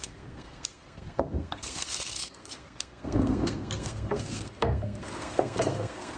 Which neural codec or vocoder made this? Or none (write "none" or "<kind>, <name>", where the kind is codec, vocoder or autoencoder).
codec, SNAC